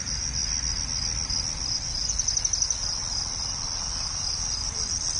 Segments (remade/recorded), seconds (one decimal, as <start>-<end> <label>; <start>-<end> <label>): 0.0-0.4 remade; 0.4-1.6 recorded; 1.6-5.2 remade